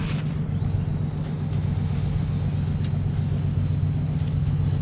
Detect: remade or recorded recorded